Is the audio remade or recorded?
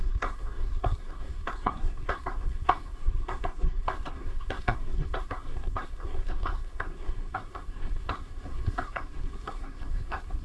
remade